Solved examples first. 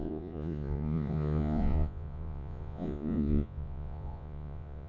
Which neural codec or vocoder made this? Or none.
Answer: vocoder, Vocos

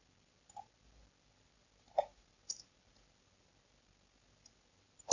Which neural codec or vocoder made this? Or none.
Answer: none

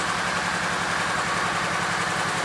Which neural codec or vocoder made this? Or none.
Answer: none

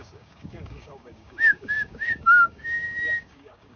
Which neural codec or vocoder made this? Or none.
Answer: codec, DAC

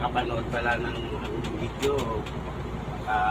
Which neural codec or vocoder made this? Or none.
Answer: none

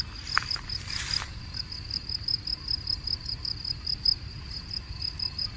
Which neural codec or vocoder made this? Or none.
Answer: vocoder, BigVGAN v2